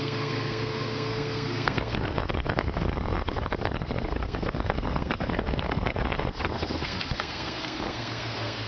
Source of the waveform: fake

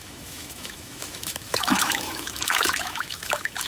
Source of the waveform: fake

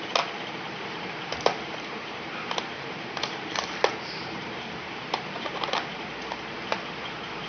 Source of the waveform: fake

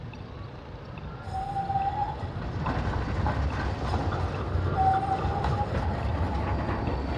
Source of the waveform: real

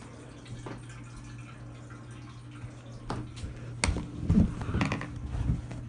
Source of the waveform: real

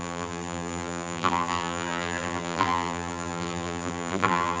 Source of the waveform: fake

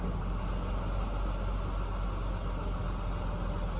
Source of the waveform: real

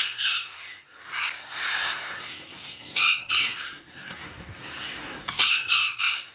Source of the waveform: fake